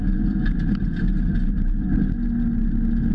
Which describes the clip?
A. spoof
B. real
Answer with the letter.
B